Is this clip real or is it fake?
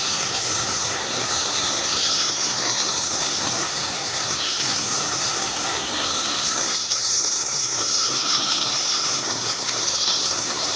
fake